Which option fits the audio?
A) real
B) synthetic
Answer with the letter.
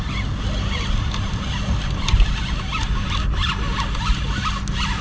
A